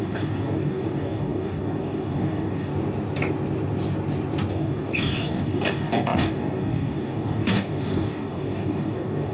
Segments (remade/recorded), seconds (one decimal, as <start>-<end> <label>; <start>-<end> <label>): 0.0-2.7 remade; 2.7-4.5 recorded; 4.5-9.3 remade